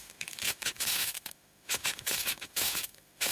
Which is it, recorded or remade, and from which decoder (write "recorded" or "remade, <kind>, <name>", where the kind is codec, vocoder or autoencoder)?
remade, autoencoder, DAC-VAE